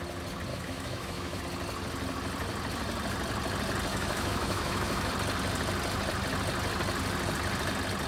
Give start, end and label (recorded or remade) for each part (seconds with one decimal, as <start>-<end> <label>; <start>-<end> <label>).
0.0-0.5 recorded; 0.5-1.4 remade; 1.4-3.9 recorded; 3.9-5.1 remade; 5.1-8.1 recorded